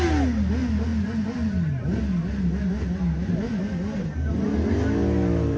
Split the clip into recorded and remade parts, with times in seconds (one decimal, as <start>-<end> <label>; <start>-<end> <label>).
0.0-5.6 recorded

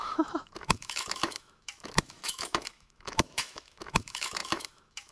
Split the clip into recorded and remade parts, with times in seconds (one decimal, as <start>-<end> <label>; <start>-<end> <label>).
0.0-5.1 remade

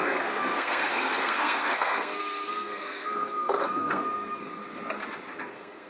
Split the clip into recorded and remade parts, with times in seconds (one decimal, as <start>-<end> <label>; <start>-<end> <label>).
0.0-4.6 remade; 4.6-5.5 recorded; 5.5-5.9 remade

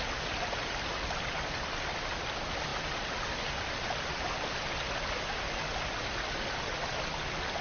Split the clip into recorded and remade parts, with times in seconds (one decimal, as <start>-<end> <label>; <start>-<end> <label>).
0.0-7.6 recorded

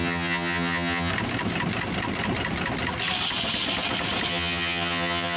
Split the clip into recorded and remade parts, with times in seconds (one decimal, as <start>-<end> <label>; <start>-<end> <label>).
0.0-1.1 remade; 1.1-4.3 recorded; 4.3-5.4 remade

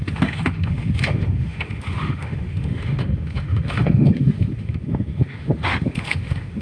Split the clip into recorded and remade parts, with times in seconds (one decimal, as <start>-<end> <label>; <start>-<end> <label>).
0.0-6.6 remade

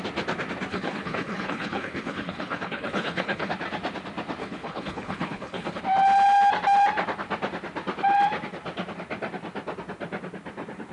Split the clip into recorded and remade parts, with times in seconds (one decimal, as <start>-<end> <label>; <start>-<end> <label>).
0.0-0.7 recorded; 0.7-3.5 remade; 3.5-4.4 recorded; 4.4-5.8 remade; 5.8-10.9 recorded